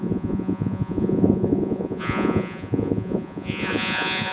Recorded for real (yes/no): no